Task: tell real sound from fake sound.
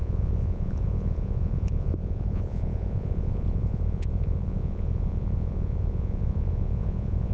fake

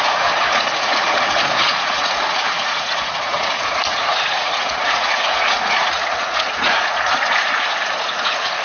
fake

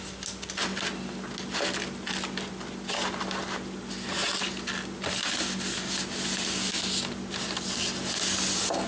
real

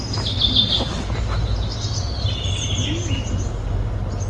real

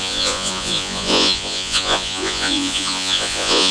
fake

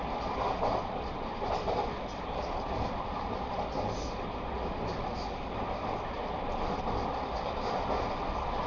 real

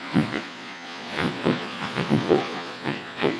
fake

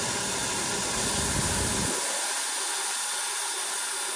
real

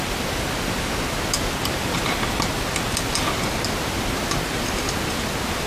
real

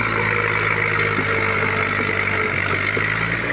real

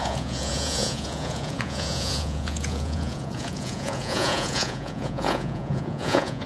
fake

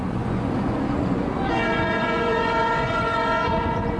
fake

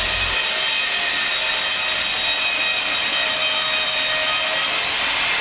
real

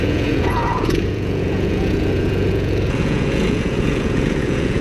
fake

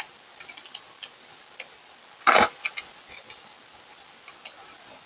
real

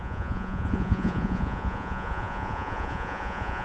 fake